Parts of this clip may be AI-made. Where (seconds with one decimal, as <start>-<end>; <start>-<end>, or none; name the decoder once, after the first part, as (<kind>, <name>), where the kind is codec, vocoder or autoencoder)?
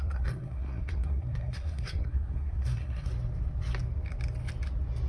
0.0-3.1 (codec, SNAC)